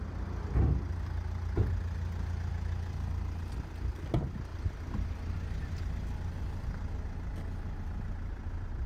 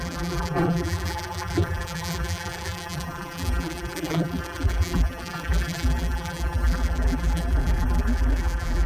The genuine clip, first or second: first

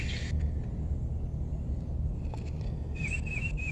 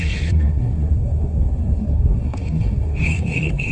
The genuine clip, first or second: first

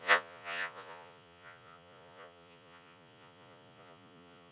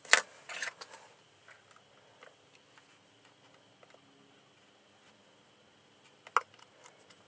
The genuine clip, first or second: second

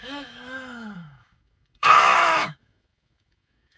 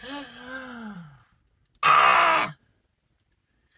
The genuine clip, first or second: second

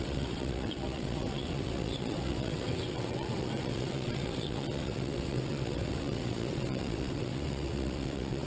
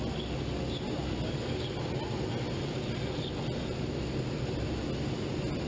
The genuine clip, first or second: second